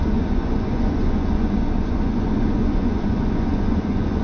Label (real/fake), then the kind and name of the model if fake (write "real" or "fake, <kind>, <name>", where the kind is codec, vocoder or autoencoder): fake, vocoder, Vocos